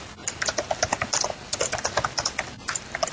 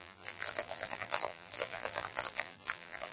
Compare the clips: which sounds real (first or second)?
first